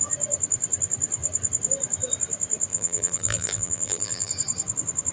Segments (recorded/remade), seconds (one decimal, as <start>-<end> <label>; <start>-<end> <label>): 0.0-2.7 recorded; 2.7-4.3 remade; 4.3-5.1 recorded